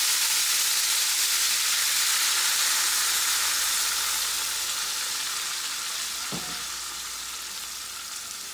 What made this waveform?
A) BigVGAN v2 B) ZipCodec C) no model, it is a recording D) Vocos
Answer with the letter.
A